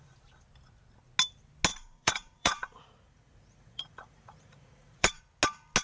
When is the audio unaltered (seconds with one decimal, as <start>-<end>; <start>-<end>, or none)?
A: 0.0-1.7; 5.2-5.8